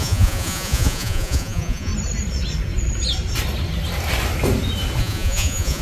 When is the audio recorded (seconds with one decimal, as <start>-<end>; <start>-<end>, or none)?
1.9-5.0

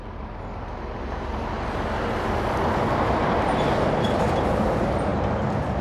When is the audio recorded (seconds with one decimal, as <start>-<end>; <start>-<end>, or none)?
0.0-5.8

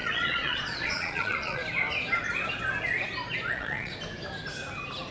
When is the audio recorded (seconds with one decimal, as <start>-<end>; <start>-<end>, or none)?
1.6-3.5; 3.9-5.1

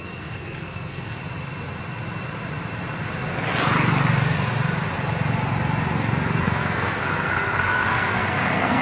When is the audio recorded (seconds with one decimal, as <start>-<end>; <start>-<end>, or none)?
1.2-6.4

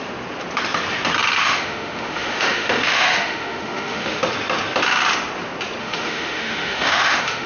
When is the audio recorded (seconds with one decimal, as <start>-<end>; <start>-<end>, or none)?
0.0-1.4; 4.2-5.8